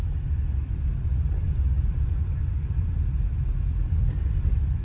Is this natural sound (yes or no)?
no